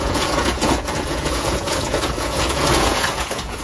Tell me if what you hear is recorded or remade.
remade